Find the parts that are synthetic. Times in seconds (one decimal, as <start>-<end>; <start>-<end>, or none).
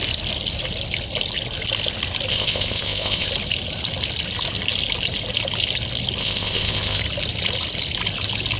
2.3-3.3; 6.2-7.0